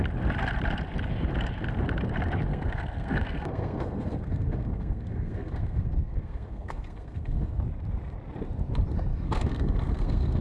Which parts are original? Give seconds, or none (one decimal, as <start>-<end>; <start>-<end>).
0.0-2.5; 7.6-9.1